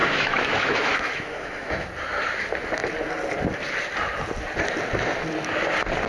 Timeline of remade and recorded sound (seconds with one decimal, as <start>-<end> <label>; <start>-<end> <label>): 0.0-1.9 remade; 1.9-6.1 recorded